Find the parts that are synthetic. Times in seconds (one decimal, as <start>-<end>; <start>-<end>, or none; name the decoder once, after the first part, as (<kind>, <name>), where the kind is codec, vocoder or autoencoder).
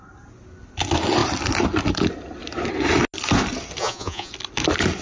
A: 3.8-4.3 (vocoder, Vocos)